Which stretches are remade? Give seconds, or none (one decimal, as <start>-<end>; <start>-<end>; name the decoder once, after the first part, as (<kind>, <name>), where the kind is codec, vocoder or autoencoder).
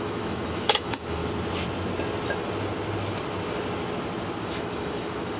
0.0-1.2 (autoencoder, DAC-VAE); 4.4-5.4